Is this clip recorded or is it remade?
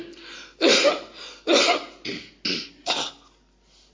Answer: recorded